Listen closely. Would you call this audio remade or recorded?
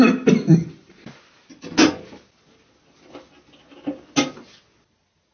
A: recorded